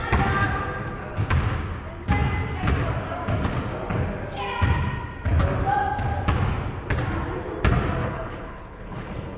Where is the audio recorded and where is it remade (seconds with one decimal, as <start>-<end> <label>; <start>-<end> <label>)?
0.0-8.0 recorded; 8.0-9.4 remade